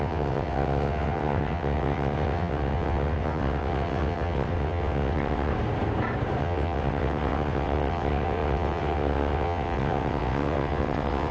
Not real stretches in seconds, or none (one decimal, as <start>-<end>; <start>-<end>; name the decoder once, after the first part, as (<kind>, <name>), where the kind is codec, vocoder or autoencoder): 0.0-5.5 (vocoder, WaveNeXt); 6.4-11.3